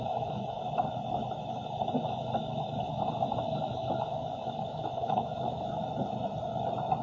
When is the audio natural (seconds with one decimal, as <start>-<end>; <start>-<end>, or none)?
1.2-3.4; 5.8-7.0